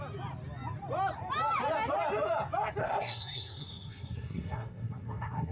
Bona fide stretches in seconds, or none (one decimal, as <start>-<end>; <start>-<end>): 0.0-2.8